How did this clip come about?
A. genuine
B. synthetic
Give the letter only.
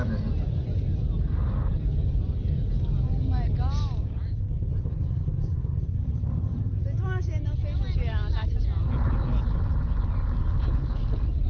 A